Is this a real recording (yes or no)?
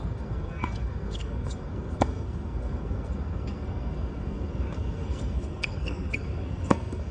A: no